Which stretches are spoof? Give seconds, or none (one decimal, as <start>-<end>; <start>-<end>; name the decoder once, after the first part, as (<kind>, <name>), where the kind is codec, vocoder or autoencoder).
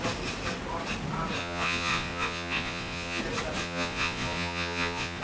1.4-3.2 (vocoder, Vocos); 3.6-5.2